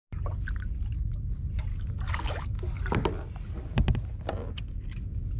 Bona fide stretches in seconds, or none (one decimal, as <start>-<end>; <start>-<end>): 0.0-1.7; 2.8-5.4